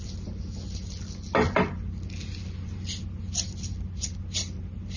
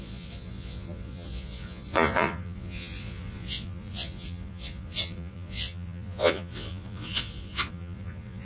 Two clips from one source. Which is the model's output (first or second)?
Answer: second